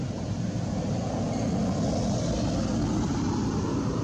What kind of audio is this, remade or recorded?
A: recorded